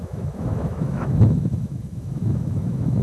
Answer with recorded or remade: remade